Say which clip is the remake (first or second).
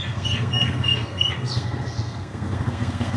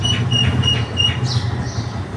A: first